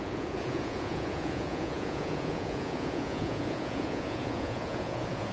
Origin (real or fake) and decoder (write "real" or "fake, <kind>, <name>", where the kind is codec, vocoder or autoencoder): fake, vocoder, Vocos